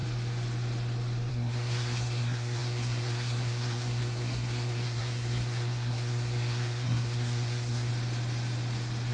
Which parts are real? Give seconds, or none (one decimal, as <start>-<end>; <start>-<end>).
0.0-1.3; 7.9-9.1